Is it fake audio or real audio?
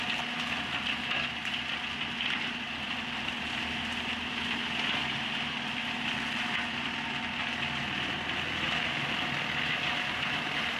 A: real